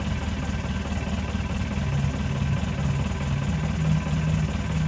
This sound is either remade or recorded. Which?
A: recorded